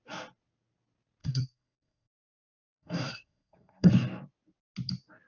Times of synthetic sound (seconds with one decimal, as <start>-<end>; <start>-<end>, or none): 1.2-3.9